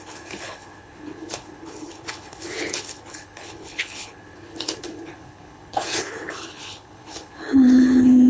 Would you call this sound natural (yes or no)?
no